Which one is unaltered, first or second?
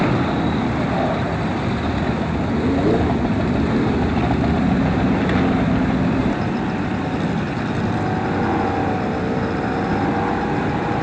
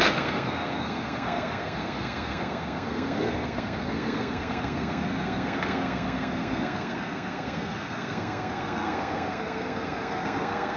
first